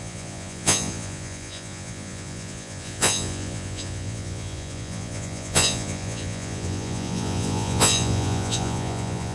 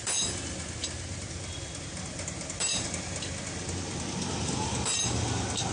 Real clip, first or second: second